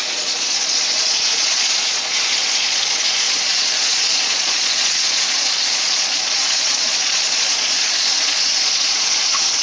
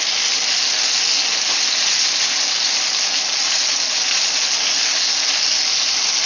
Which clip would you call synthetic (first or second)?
first